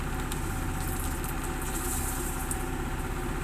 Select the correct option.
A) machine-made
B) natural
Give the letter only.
B